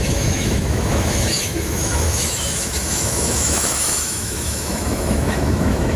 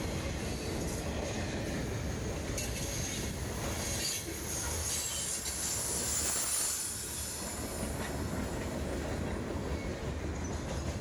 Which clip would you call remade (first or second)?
first